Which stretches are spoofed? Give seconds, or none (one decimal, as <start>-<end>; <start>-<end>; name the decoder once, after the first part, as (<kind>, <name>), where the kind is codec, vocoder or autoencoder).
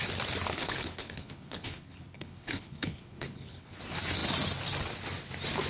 0.5-3.8 (codec, HILCodec)